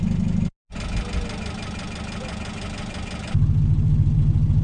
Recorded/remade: recorded